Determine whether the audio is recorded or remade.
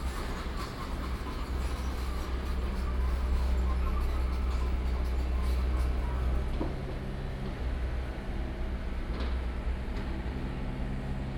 recorded